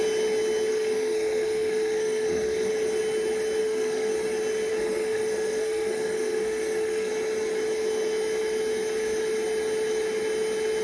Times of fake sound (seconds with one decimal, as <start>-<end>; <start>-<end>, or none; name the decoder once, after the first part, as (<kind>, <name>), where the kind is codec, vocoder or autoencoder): 0.7-2.7 (codec, SNAC); 3.6-4.1; 4.7-7.1